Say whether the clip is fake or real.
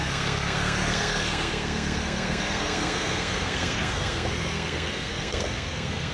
fake